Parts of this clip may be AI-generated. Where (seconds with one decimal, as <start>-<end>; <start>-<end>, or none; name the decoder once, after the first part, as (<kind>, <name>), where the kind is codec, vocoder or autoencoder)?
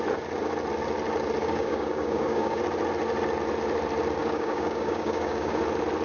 1.4-2.6 (codec, DAC); 4.2-5.6